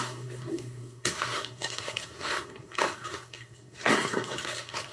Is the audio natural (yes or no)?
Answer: no